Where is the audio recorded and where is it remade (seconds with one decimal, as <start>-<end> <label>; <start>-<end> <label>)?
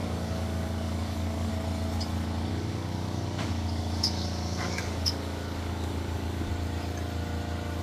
0.0-1.5 remade; 1.5-2.5 recorded; 2.5-6.5 remade; 6.5-7.8 recorded